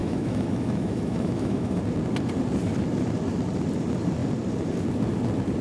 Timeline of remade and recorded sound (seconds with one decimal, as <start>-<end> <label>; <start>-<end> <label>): 0.0-1.8 remade; 1.8-5.6 recorded

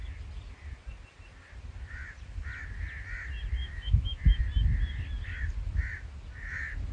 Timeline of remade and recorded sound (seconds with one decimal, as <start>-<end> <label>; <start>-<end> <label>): 0.0-3.6 recorded; 3.6-4.4 remade; 4.4-6.9 recorded

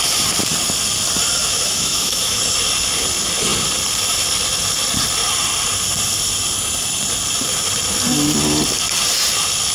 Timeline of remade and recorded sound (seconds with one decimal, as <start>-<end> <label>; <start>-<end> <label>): 0.0-1.4 recorded; 1.4-2.4 remade; 2.4-9.7 recorded

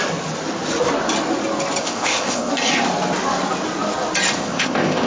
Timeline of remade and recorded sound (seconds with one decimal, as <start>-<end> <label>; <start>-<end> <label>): 0.0-1.8 recorded; 1.8-2.5 remade; 2.5-4.4 recorded; 4.4-5.1 remade

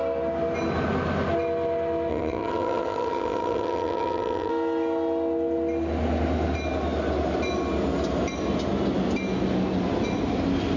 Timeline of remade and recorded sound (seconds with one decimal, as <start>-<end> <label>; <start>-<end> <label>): 0.0-2.1 recorded; 2.1-4.5 remade; 4.5-10.8 recorded

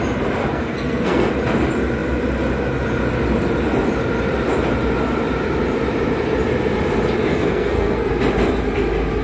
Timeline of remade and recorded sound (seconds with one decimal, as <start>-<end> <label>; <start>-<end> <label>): 0.0-0.4 recorded; 0.4-1.3 remade; 1.3-7.3 recorded; 7.3-8.1 remade; 8.1-9.2 recorded

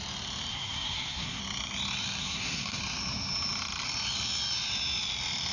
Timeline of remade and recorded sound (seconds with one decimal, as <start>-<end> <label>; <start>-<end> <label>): 0.0-0.5 recorded; 0.5-1.4 remade; 1.4-2.2 recorded; 2.2-2.8 remade; 2.8-5.5 recorded